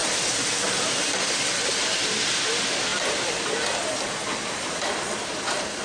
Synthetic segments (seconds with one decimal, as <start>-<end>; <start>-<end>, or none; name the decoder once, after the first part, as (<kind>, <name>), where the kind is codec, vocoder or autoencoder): 2.9-3.4 (vocoder, BigVGAN v2)